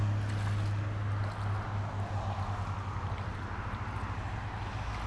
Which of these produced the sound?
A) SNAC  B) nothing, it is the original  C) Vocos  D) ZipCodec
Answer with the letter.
B